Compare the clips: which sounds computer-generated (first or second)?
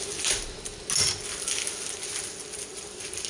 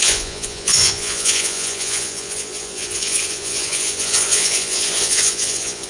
second